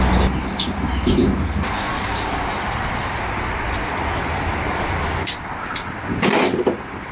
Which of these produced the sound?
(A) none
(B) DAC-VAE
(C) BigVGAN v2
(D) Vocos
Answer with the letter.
A